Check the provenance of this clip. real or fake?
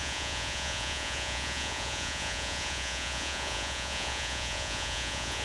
fake